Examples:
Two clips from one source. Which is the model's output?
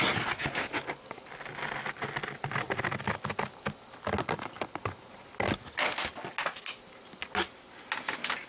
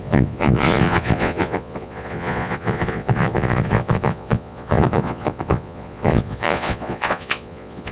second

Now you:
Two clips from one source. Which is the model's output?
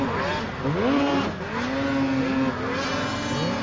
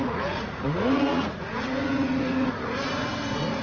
second